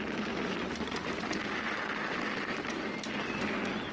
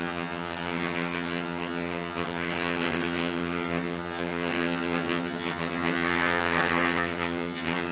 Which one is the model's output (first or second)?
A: second